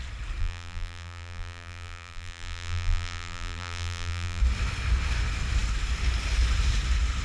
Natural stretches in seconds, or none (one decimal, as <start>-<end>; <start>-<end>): 0.0-0.4; 4.4-7.2